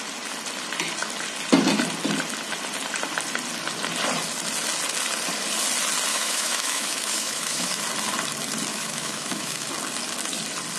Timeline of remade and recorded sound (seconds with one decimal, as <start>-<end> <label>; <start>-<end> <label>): 0.0-6.1 recorded; 6.1-7.8 remade; 7.8-8.7 recorded; 8.7-9.7 remade; 9.7-10.8 recorded